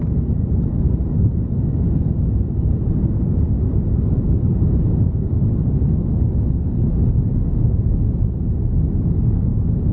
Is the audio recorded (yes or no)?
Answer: yes